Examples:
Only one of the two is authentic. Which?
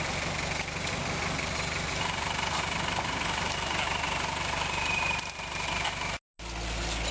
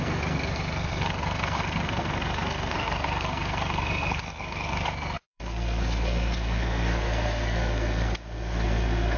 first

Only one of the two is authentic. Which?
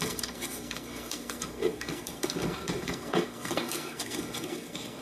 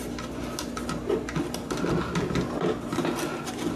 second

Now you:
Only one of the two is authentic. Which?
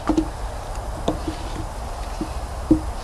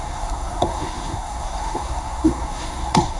first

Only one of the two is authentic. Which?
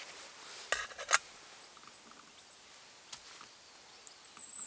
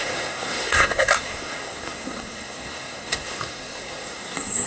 first